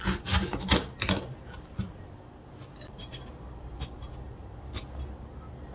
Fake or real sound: real